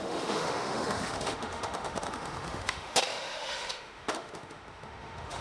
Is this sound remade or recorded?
remade